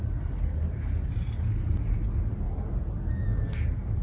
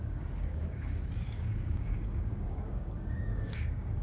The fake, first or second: second